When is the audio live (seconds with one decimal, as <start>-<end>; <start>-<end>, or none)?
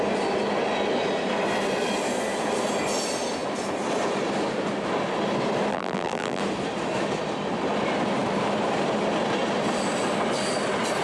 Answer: 0.0-5.7; 6.4-11.0